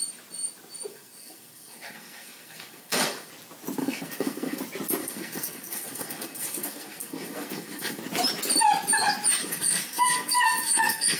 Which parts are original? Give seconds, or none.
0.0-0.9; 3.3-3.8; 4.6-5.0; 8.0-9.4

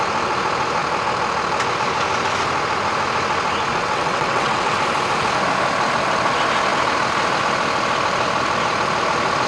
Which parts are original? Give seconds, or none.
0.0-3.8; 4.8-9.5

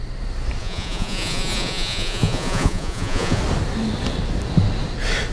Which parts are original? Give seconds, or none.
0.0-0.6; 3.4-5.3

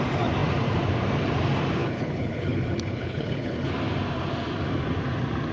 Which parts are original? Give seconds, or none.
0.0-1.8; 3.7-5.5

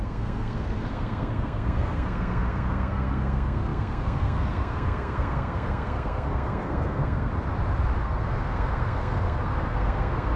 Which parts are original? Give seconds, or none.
7.3-8.0

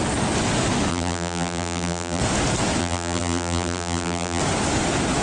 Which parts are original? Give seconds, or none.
0.0-0.9; 2.2-2.8; 4.4-5.2